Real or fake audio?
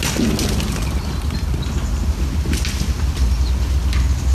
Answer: real